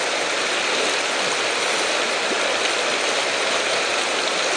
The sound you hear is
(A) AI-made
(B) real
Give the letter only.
B